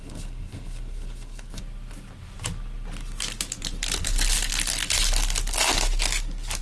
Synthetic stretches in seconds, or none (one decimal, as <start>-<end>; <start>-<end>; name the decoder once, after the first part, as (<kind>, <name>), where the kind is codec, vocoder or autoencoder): 0.0-1.6 (codec, SNAC)